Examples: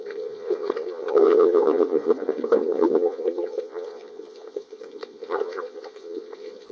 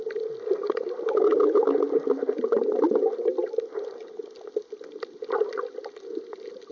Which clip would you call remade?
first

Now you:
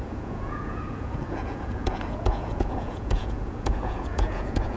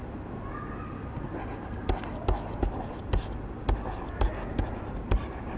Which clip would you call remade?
first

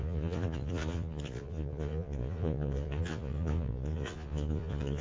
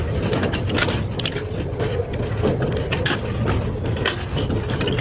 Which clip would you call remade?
first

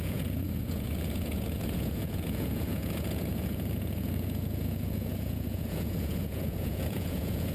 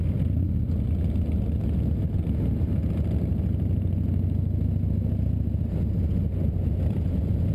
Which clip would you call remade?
first